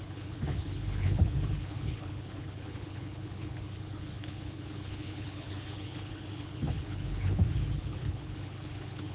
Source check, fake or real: fake